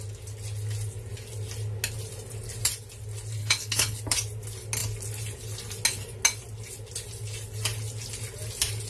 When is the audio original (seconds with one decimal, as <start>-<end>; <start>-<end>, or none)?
0.0-3.4; 4.0-8.9